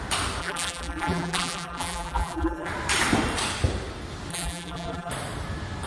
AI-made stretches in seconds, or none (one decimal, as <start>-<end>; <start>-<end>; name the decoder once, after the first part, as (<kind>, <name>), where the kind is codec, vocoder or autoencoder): 0.4-2.7 (vocoder, BigVGAN v2); 4.3-5.1